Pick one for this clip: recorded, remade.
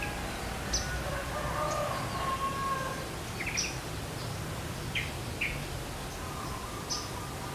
recorded